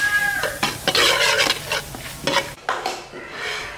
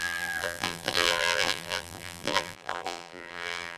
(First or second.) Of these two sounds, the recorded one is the first